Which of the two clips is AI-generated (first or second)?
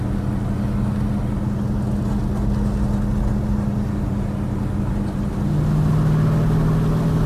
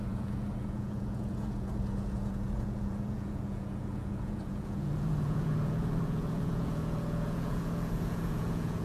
second